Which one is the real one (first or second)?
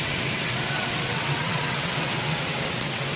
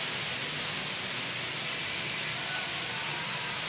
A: second